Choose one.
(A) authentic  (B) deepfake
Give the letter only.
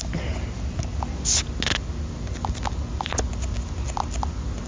A